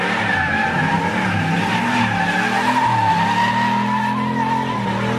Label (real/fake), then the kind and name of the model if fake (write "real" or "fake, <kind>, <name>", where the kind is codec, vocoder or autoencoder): real